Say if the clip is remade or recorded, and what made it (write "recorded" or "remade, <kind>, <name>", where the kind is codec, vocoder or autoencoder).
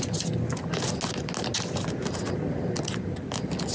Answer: recorded